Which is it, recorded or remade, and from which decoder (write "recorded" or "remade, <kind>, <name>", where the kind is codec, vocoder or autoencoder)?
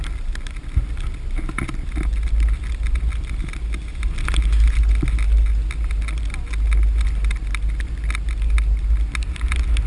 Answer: recorded